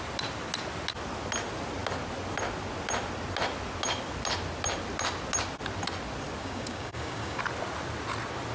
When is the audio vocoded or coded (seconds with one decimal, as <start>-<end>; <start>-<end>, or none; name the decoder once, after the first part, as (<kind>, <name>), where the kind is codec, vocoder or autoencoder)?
6.4-7.4 (codec, DAC)